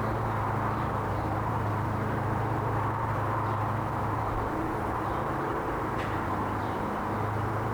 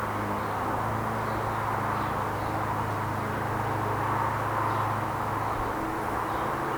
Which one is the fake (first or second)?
first